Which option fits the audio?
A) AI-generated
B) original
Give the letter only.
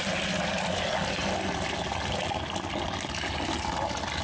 B